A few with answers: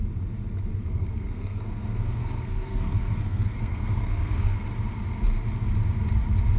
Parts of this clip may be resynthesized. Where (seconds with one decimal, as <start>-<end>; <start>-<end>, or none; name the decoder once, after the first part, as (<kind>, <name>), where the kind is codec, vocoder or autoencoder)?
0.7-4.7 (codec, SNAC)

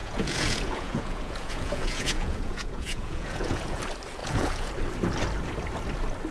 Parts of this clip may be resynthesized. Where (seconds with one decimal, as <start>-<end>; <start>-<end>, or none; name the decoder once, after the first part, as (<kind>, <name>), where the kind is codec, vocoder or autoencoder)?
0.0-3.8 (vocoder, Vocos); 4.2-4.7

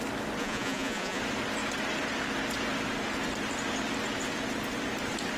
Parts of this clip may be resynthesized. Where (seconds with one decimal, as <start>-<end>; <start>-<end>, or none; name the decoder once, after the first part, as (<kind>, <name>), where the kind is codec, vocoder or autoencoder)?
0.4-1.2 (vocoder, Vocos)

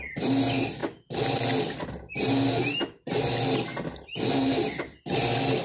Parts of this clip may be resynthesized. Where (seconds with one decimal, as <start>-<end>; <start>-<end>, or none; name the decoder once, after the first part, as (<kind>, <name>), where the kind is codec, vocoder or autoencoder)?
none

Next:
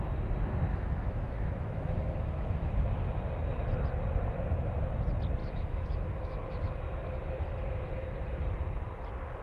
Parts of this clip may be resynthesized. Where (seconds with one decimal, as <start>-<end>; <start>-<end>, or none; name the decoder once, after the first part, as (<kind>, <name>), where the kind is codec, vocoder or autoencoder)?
0.7-2.7 (autoencoder, DAC-VAE); 5.4-6.8